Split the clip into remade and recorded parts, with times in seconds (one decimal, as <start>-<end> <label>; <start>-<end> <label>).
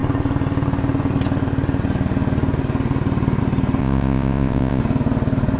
0.0-3.8 recorded; 3.8-4.8 remade; 4.8-5.6 recorded